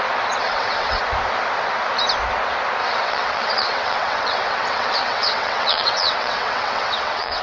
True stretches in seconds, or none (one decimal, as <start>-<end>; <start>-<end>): 0.0-0.4; 1.0-2.8